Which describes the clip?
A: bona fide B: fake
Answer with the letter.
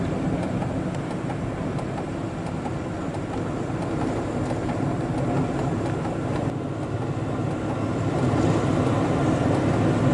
A